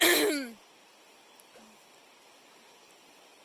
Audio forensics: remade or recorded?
recorded